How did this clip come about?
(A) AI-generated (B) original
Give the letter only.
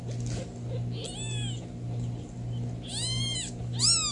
B